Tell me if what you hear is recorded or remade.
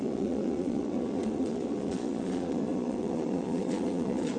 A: remade